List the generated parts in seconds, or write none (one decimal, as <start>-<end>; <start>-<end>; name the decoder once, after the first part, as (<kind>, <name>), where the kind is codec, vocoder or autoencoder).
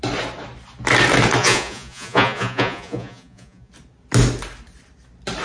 1.4-3.7 (vocoder, Vocos)